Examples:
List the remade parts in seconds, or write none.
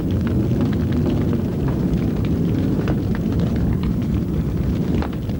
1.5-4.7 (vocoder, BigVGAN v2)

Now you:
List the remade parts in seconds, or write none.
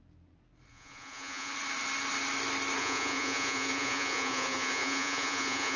0.7-1.5 (vocoder, Vocos); 2.8-5.8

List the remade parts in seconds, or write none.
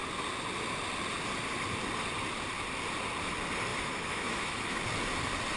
3.7-4.8 (autoencoder, DAC-VAE)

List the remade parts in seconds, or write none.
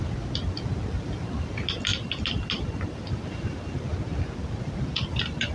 none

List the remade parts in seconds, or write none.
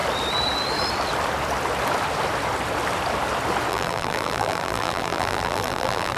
3.7-6.2 (vocoder, BigVGAN v2)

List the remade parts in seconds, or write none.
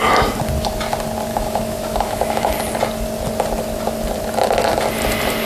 1.3-2.5 (autoencoder, DAC-VAE)